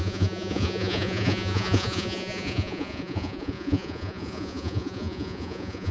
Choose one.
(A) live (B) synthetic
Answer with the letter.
B